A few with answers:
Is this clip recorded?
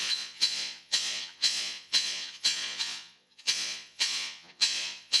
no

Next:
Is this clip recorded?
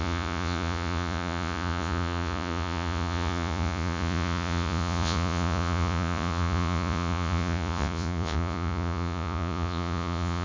no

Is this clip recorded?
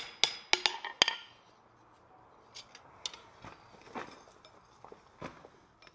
yes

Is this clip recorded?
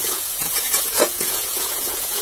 no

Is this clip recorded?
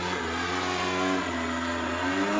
yes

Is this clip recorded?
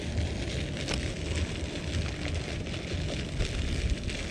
yes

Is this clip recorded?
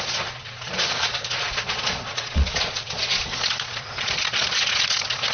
no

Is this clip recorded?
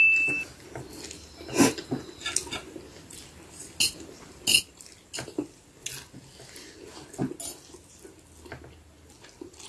yes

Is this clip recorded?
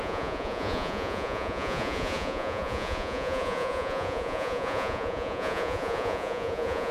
no